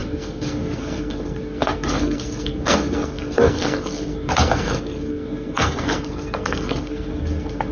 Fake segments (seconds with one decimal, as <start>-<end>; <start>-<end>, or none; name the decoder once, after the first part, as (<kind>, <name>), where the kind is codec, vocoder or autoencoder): 0.0-7.7 (codec, SNAC)